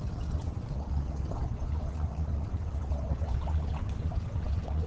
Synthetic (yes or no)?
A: yes